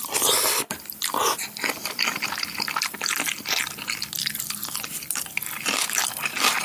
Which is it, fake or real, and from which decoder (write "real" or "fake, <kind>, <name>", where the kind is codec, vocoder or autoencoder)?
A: real